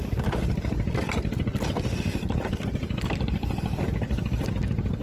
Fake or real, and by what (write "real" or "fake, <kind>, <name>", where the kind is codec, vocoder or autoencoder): real